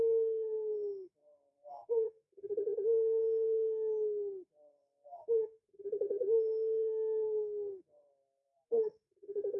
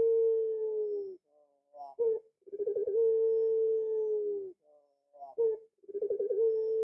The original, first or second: second